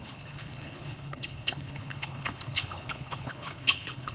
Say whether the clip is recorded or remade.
remade